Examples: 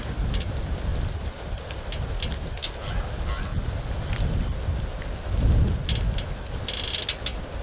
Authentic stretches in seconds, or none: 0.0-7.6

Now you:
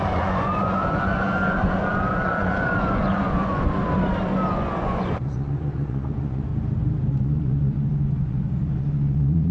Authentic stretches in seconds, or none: 3.8-4.5; 6.5-7.1

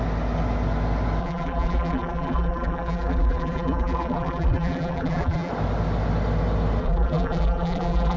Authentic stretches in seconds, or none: 0.0-1.2; 5.5-6.8

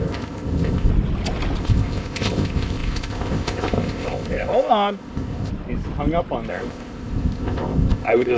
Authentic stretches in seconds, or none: 0.9-1.6; 5.5-6.5

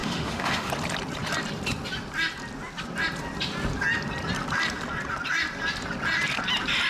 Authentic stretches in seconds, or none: 0.7-6.9

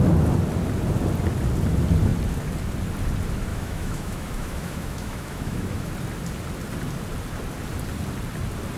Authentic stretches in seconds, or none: 0.0-3.5; 5.9-8.8

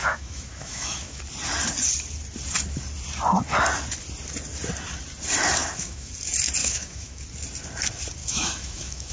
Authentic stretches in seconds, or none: 1.2-5.6; 6.1-6.6; 7.2-8.2

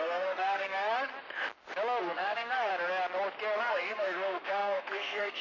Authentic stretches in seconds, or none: 1.1-2.0; 2.7-3.6